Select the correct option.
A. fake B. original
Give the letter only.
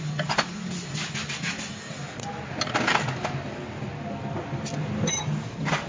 B